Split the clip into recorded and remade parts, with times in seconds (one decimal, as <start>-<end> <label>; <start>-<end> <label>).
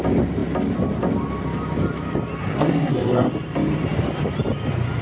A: 0.0-2.4 recorded; 2.4-3.3 remade; 3.3-5.0 recorded